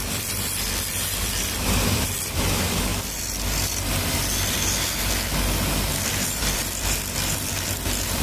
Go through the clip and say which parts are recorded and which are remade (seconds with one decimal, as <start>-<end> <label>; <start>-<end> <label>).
0.0-2.9 remade; 2.9-6.1 recorded; 6.1-8.2 remade